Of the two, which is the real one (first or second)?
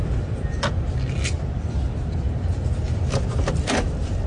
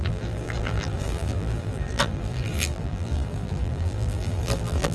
first